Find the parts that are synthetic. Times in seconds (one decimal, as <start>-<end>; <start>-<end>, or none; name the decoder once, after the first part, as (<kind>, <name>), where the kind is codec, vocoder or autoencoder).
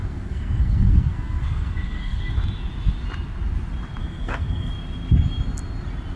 0.0-2.2 (codec, SNAC); 4.0-4.7